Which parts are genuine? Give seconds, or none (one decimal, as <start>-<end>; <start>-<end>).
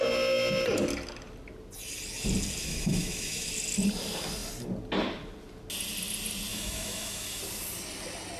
0.0-2.6; 3.5-6.5; 7.4-8.4